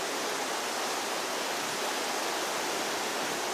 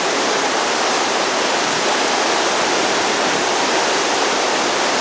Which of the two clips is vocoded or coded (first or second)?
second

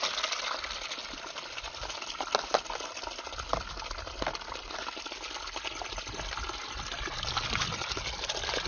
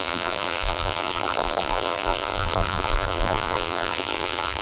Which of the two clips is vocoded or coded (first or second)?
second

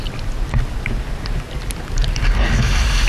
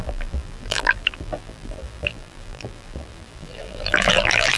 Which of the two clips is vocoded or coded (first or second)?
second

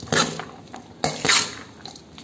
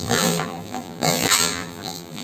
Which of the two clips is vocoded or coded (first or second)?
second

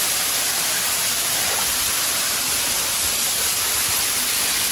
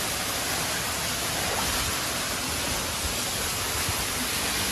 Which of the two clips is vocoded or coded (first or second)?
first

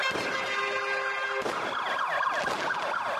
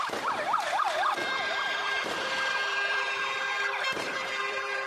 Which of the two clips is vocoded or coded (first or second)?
second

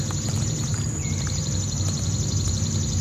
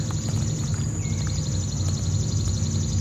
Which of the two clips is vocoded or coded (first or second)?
first